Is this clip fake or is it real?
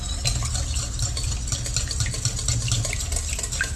real